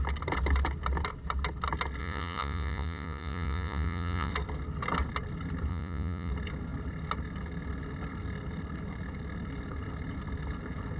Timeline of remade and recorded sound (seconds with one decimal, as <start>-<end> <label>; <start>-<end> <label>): 0.0-2.0 recorded; 2.0-4.3 remade; 4.3-5.7 recorded; 5.7-6.3 remade; 6.3-11.0 recorded